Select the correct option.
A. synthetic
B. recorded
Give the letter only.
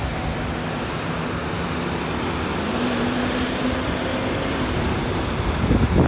B